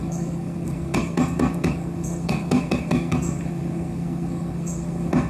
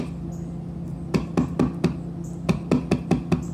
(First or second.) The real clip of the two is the second